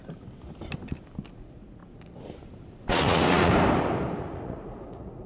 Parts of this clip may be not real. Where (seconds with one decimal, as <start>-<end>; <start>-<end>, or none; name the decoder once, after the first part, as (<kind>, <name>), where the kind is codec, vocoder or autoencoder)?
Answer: 1.4-1.8 (vocoder, Vocos); 2.9-3.5; 4.3-5.3